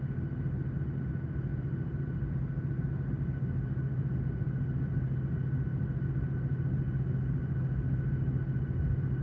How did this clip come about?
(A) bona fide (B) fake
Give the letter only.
A